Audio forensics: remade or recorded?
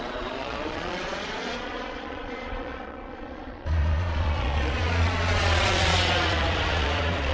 remade